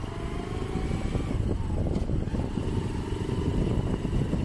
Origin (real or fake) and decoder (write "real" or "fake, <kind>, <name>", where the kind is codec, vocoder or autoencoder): real